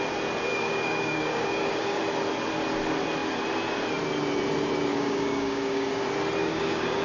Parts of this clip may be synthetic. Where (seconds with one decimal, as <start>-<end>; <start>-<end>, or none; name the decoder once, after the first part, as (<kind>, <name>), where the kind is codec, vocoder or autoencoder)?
0.5-2.0 (codec, DAC); 4.9-5.9; 6.4-7.0

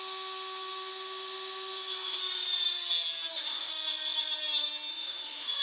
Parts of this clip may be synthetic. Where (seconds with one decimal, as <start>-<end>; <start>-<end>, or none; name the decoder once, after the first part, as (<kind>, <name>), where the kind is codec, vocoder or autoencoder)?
0.0-2.2 (autoencoder, DAC-VAE); 3.3-3.7; 4.9-5.6

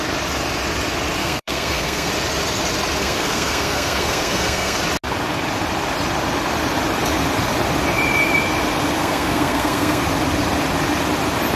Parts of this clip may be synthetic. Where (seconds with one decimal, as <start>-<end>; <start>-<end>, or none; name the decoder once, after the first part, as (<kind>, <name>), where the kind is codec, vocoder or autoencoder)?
1.2-2.1 (codec, SNAC); 3.0-4.8; 9.0-10.0

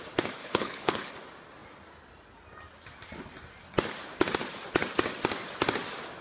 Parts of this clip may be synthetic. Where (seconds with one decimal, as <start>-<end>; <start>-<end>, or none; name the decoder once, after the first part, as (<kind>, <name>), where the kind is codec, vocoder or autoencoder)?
0.4-1.1 (codec, HILCodec)

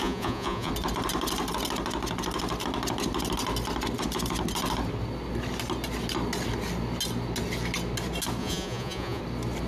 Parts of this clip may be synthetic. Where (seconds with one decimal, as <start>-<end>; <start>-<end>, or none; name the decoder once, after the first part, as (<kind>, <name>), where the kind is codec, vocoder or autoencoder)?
0.0-0.7 (vocoder, Vocos); 8.4-9.2

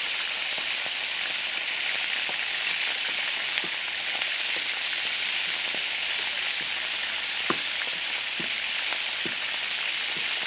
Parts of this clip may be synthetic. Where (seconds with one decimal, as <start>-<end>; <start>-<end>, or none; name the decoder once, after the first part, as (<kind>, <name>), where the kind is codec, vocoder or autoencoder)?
none

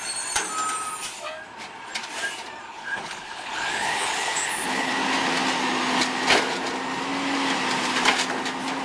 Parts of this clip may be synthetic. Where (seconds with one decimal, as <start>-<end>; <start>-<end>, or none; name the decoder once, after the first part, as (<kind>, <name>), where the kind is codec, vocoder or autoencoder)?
2.7-4.9 (codec, HILCodec)